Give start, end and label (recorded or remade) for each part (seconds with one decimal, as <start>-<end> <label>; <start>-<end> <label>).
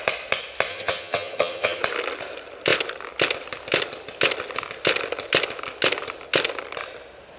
0.0-0.7 recorded; 0.7-1.8 remade; 1.8-7.4 recorded